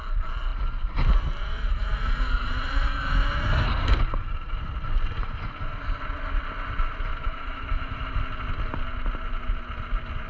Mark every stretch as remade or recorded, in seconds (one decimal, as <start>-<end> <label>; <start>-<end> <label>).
0.0-7.1 recorded; 7.1-8.2 remade; 8.2-10.3 recorded

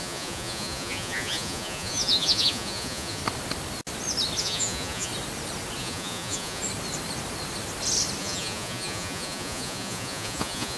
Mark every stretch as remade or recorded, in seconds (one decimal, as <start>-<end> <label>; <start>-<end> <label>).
0.0-3.2 remade; 3.2-4.4 recorded; 4.4-5.1 remade; 5.1-5.8 recorded; 5.8-6.6 remade; 6.6-8.2 recorded; 8.2-10.8 remade

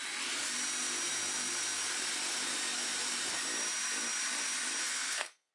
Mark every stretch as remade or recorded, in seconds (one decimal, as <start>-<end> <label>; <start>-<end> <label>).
0.0-4.8 recorded; 4.8-5.5 remade

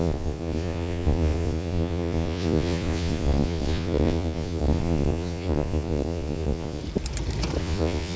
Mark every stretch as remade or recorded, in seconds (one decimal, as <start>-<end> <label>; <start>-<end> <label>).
0.0-6.8 remade; 6.8-7.6 recorded; 7.6-8.2 remade